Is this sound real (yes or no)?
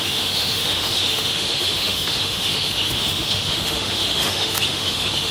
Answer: no